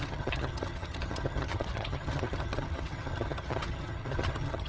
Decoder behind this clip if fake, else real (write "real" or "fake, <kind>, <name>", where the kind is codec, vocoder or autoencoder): fake, vocoder, HiFi-GAN